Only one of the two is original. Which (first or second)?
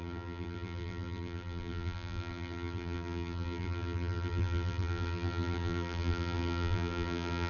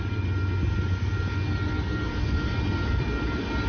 second